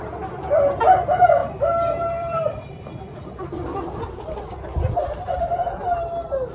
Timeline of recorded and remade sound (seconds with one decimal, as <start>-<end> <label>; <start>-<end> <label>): 0.0-1.4 recorded; 1.4-5.3 remade; 5.3-6.5 recorded